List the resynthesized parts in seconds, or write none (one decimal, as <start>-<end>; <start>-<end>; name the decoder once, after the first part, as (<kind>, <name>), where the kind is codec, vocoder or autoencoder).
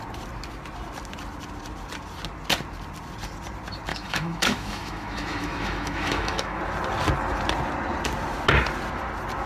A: 3.9-6.6 (autoencoder, DAC-VAE)